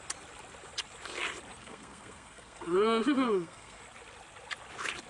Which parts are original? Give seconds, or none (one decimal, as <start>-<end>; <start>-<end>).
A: 0.0-1.6; 3.8-5.1